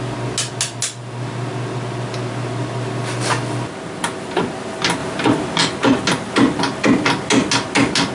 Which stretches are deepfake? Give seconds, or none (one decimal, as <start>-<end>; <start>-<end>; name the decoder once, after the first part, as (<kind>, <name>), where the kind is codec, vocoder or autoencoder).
none